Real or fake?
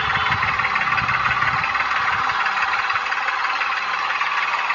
real